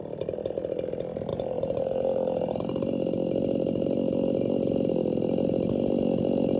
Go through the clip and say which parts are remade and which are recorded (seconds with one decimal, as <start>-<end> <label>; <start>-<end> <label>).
0.0-1.3 recorded; 1.3-1.8 remade; 1.8-6.6 recorded